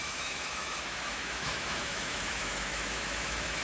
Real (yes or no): no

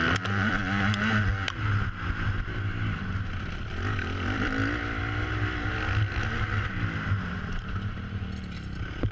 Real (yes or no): yes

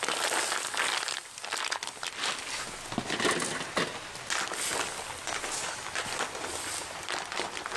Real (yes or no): yes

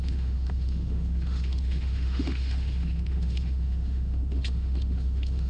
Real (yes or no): no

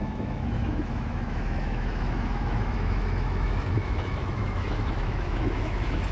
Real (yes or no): no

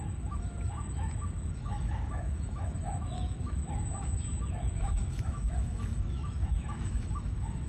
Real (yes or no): no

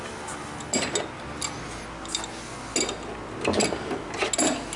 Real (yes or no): yes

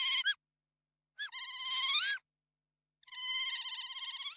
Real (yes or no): yes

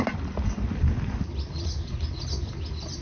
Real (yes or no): yes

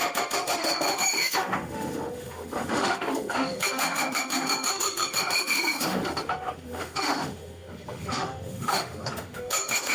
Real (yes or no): no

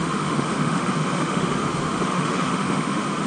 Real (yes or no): no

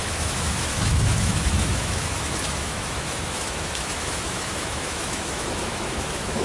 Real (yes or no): no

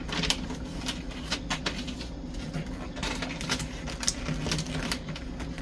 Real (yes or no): yes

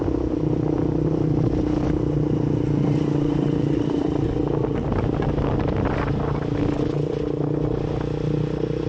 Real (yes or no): yes